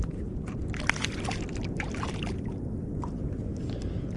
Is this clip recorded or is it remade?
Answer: recorded